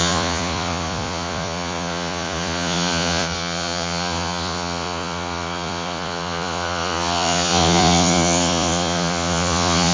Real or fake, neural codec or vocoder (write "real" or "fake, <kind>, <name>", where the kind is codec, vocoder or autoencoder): fake, vocoder, Vocos